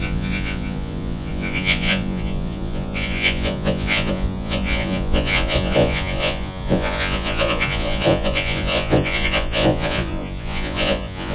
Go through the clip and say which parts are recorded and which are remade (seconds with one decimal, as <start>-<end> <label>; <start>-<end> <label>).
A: 0.0-11.3 remade

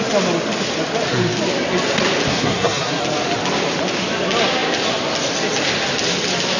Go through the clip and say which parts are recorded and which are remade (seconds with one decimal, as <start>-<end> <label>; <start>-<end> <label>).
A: 0.0-2.3 recorded; 2.3-3.0 remade; 3.0-6.6 recorded